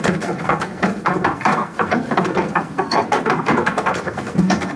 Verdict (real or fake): fake